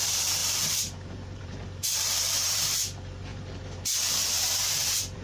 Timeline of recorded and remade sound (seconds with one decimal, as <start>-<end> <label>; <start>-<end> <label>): 0.0-5.2 remade